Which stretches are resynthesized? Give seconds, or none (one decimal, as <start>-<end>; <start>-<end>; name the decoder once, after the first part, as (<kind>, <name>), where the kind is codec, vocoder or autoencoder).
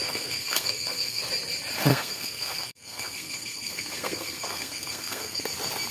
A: 0.0-1.2 (codec, SNAC); 1.9-5.4